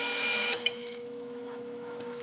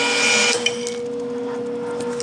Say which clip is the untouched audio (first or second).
second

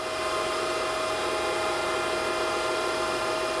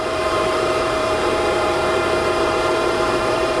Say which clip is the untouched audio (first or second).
first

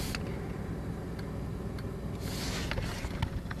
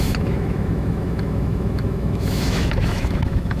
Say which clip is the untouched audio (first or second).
first